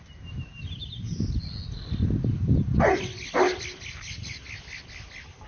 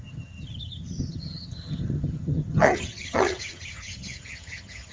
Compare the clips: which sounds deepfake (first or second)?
second